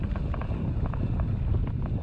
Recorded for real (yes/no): yes